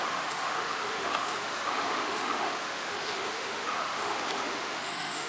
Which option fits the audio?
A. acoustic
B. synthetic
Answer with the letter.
B